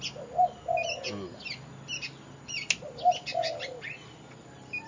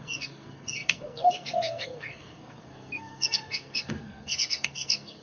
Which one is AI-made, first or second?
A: second